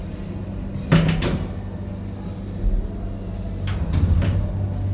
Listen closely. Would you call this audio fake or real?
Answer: real